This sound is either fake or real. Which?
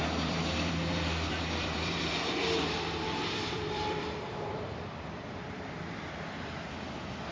fake